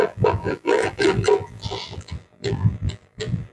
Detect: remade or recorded remade